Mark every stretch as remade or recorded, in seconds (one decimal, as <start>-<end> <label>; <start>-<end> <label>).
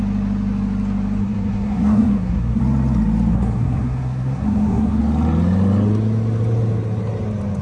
0.0-1.2 recorded; 1.2-2.6 remade; 2.6-3.3 recorded; 3.3-5.0 remade; 5.0-7.6 recorded